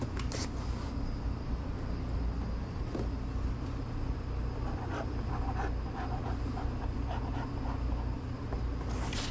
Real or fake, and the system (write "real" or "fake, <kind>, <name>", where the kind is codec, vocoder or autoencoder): real